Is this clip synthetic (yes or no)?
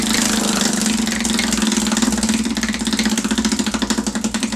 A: no